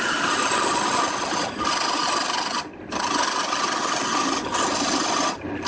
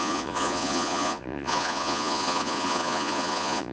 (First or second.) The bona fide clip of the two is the first